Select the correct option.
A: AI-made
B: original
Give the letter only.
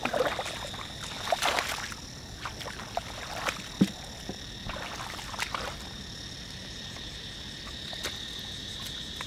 B